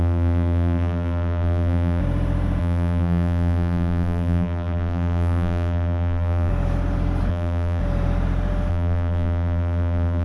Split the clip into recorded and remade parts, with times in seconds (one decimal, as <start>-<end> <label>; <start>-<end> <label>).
0.0-2.0 remade; 2.0-2.6 recorded; 2.6-6.5 remade; 6.5-7.3 recorded; 7.3-7.8 remade; 7.8-8.7 recorded; 8.7-10.2 remade